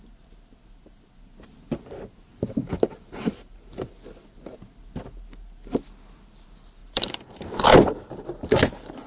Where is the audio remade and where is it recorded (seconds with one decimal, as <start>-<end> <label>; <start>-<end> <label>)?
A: 0.0-2.3 recorded; 2.3-3.9 remade; 3.9-6.8 recorded; 6.8-7.5 remade; 7.5-9.1 recorded